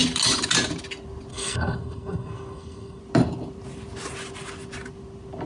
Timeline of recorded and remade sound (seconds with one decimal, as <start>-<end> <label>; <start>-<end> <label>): 0.0-1.3 recorded; 1.3-3.0 remade; 3.0-5.5 recorded